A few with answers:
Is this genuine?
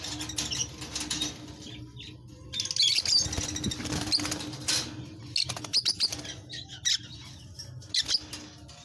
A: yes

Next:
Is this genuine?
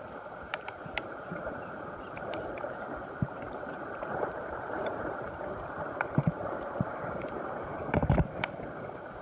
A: no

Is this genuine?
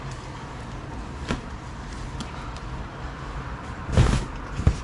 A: yes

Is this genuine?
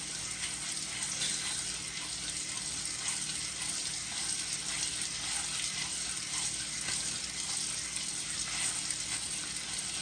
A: yes